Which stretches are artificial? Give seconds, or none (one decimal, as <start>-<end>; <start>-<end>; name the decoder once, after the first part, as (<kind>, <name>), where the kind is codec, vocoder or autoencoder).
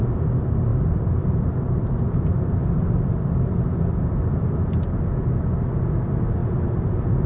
0.7-4.8 (vocoder, BigVGAN v2)